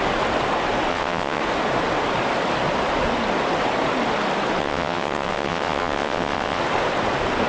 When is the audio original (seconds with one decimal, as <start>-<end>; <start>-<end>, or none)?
0.0-0.9; 1.4-4.6; 6.6-7.5